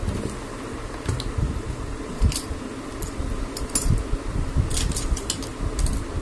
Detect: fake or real real